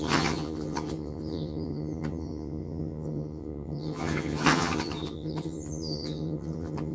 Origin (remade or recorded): remade